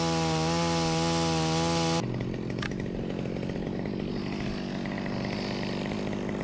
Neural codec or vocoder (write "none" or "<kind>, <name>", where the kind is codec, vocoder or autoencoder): none